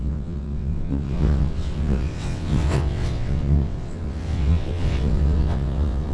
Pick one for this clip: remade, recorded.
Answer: remade